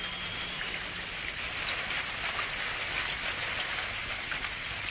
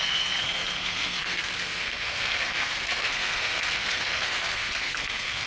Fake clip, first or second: second